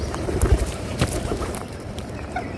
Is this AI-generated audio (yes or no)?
yes